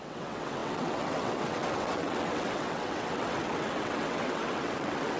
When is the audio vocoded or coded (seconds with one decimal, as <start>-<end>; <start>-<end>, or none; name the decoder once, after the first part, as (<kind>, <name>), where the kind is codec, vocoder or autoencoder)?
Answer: 0.0-5.2 (vocoder, WaveNeXt)